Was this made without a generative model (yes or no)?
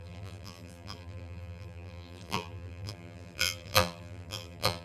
no